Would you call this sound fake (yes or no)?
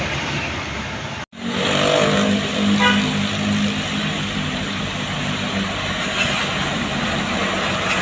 no